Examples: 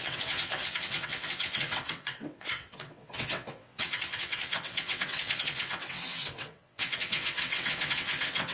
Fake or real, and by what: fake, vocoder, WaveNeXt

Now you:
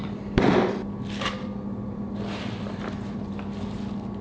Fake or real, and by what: real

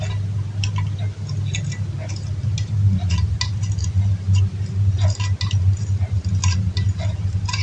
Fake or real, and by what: real